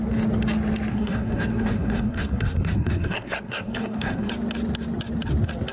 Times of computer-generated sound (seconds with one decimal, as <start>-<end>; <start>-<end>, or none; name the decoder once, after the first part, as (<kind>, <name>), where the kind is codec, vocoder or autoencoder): 0.9-4.3 (codec, SNAC)